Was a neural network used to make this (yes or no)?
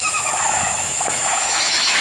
yes